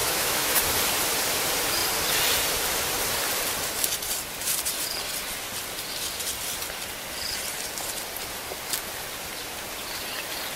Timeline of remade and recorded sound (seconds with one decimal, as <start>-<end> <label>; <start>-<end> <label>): 0.0-0.6 remade; 0.6-10.6 recorded